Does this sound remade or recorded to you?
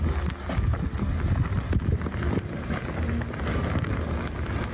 recorded